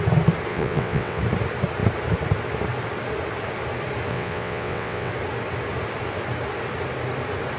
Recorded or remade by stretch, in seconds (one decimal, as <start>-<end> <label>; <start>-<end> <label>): 0.0-0.5 recorded; 0.5-1.2 remade; 1.2-4.1 recorded; 4.1-5.1 remade; 5.1-7.6 recorded

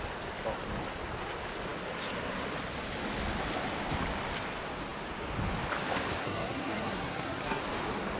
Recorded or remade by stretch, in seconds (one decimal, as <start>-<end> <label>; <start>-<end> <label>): 0.0-6.2 recorded; 6.2-7.6 remade; 7.6-8.2 recorded

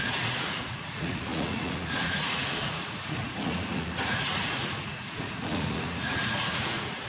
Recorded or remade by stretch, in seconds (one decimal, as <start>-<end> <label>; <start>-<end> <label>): 0.0-7.1 remade

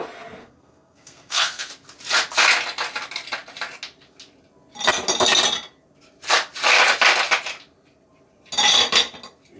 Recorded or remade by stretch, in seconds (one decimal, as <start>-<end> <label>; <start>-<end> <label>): 0.0-0.4 recorded; 0.4-1.7 remade; 1.7-9.6 recorded